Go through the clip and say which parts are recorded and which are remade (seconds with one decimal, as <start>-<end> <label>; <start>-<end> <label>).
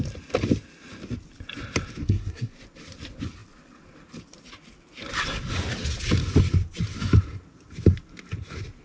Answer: 0.0-2.0 recorded; 2.0-2.5 remade; 2.5-8.8 recorded